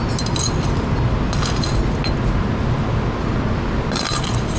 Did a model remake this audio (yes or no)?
no